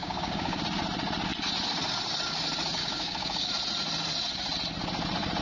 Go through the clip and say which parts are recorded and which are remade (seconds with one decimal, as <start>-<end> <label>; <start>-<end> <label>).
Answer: 0.0-0.6 remade; 0.6-2.8 recorded; 2.8-3.5 remade; 3.5-5.4 recorded